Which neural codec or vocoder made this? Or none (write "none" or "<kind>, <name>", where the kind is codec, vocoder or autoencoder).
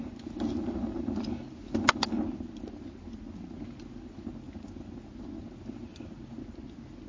none